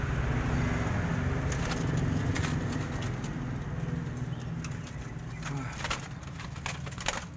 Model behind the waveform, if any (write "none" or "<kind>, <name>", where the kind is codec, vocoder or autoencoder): none